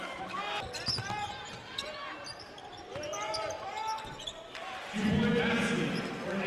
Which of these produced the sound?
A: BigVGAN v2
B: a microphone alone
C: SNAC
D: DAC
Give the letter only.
B